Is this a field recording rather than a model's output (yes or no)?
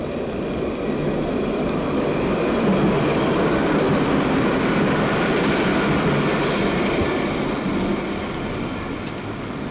yes